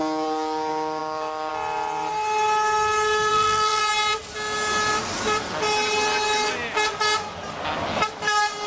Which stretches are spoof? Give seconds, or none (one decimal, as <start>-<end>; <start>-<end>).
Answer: 3.3-3.8